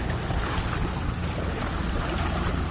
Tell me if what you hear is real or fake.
real